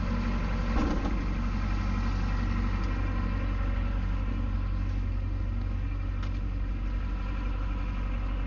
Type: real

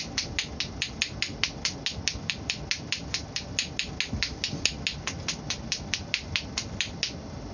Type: real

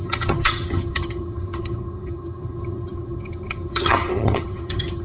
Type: fake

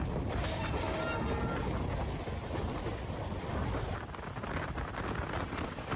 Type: real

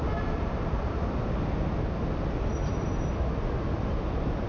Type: real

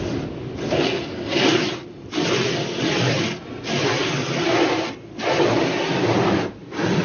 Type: real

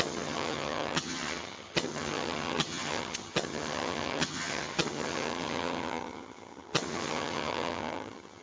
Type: fake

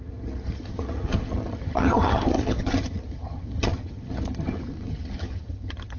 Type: fake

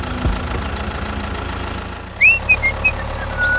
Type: real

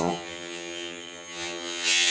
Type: fake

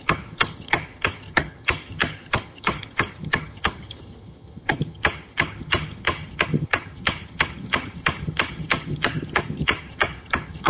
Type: fake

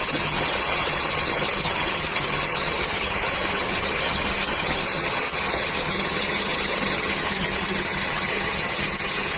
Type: fake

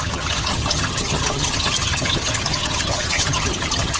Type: fake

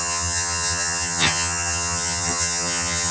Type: fake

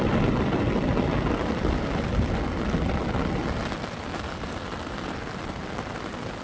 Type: real